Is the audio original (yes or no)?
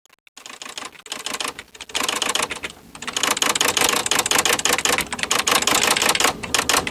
yes